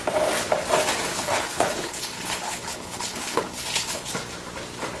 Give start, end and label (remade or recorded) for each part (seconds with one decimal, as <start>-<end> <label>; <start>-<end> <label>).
0.0-1.1 recorded; 1.1-4.1 remade; 4.1-5.0 recorded